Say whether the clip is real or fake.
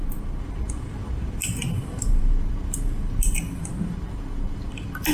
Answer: fake